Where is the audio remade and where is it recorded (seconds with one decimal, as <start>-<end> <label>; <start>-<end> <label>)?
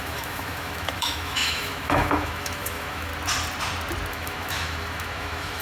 0.0-3.1 remade; 3.1-4.1 recorded; 4.1-5.6 remade